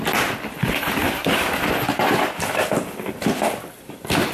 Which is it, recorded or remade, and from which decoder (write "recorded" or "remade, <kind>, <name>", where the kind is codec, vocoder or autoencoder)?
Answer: recorded